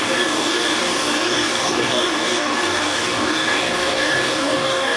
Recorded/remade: remade